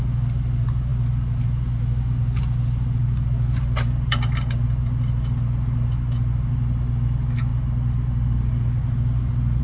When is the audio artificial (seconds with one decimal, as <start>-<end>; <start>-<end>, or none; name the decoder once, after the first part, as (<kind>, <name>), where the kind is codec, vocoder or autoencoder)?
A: none